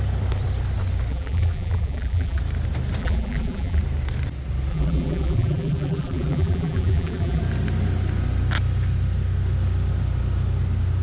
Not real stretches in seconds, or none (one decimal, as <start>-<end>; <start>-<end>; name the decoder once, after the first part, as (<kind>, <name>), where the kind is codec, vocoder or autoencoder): 1.1-2.4 (vocoder, BigVGAN v2); 3.0-3.8; 4.7-7.4